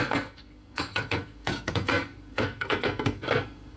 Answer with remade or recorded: remade